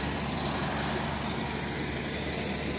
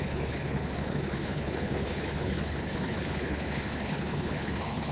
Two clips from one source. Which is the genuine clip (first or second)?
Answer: first